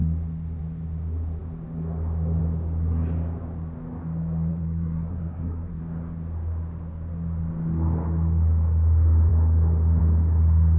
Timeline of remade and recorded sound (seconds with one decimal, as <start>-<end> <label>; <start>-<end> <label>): 0.0-4.5 recorded; 4.5-5.8 remade; 5.8-10.8 recorded